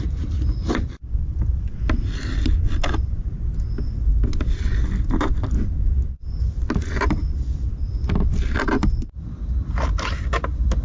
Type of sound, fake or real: real